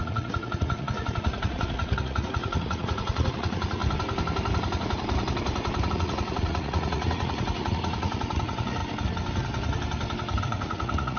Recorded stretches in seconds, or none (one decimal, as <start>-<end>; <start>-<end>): 3.8-5.9; 8.8-10.4

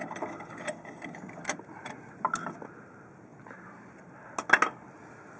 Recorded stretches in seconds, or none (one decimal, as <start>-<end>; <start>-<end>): 0.0-5.4

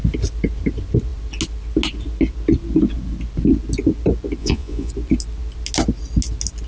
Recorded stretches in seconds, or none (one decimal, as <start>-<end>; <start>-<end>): 0.0-4.4; 4.9-6.7

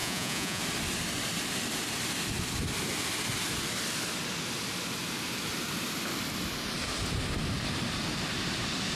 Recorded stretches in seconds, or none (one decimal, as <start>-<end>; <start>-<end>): 0.6-9.0